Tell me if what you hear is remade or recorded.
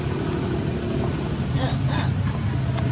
recorded